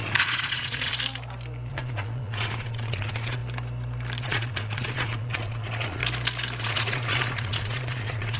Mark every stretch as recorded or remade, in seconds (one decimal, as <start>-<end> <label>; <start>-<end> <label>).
0.0-0.9 remade; 0.9-1.7 recorded; 1.7-3.4 remade; 3.4-4.2 recorded; 4.2-6.0 remade; 6.0-6.6 recorded; 6.6-8.4 remade